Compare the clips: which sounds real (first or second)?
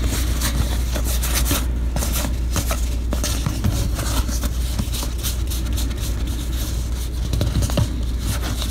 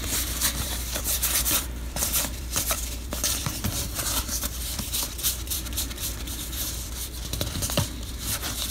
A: first